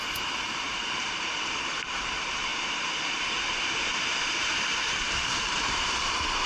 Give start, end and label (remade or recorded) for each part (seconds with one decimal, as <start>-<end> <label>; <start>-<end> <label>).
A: 0.0-6.5 remade